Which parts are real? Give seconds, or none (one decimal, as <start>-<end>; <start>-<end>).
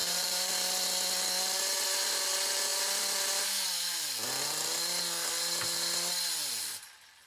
0.5-7.3